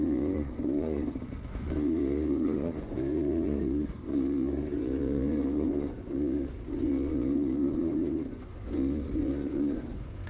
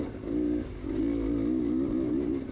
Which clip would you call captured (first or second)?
second